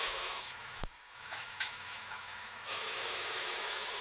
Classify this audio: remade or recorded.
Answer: remade